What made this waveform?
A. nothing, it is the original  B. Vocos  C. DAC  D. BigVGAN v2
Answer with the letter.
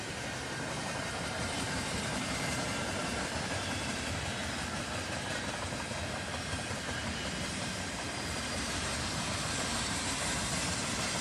D